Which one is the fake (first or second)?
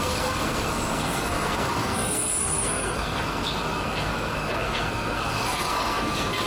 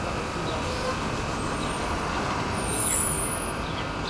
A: first